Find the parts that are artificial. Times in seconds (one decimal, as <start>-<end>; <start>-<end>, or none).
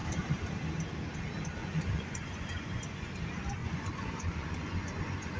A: 1.6-3.1; 3.6-5.4